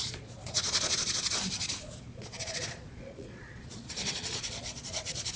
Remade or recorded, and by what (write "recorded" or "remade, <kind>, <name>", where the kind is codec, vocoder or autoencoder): remade, vocoder, Vocos